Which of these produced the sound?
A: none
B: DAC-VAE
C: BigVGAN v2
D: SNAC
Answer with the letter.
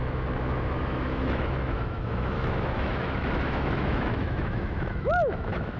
B